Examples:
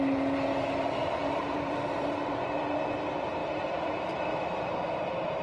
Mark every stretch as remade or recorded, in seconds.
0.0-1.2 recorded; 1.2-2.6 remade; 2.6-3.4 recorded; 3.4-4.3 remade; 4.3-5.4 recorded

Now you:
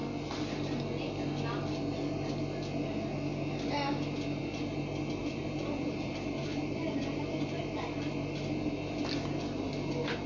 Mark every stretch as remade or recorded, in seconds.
0.0-5.2 recorded; 5.2-7.6 remade; 7.6-10.3 recorded